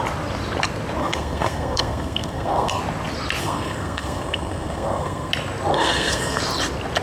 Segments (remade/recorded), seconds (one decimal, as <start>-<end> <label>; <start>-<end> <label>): 0.0-1.0 recorded; 1.0-2.8 remade; 2.8-3.4 recorded; 3.4-5.3 remade; 5.3-5.7 recorded; 5.7-6.4 remade; 6.4-7.0 recorded